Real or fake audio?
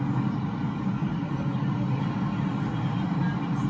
real